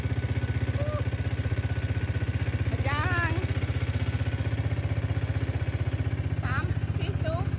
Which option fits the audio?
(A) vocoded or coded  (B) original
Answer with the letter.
B